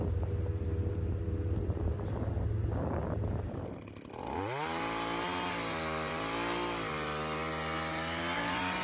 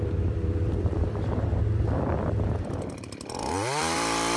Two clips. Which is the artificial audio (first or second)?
second